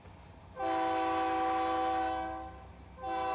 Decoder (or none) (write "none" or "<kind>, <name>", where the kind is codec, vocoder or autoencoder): none